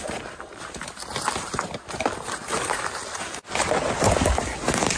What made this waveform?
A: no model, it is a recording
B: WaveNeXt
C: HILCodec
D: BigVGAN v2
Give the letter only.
A